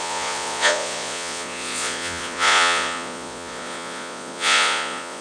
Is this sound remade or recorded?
remade